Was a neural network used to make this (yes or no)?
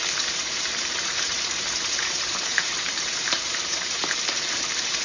yes